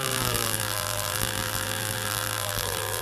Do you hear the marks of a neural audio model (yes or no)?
yes